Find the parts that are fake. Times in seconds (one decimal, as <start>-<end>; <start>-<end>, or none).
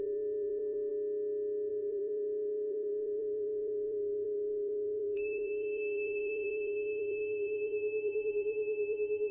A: 0.0-0.9; 1.7-9.3